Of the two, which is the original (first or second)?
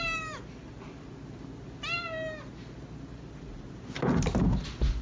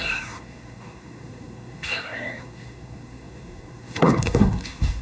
first